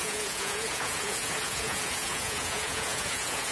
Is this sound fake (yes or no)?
yes